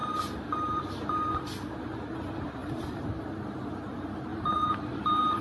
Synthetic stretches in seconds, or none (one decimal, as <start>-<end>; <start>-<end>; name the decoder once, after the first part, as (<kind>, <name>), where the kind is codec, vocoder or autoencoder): 4.3-5.4 (vocoder, BigVGAN v2)